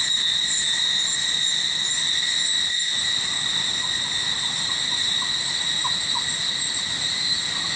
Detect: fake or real real